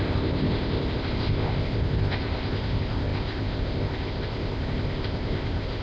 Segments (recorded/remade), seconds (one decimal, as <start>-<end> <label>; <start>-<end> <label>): 0.0-5.8 remade